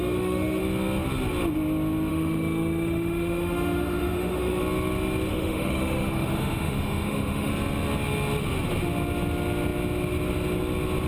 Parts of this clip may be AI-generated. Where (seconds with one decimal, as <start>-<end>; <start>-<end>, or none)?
0.0-0.6; 2.1-4.6; 5.3-7.5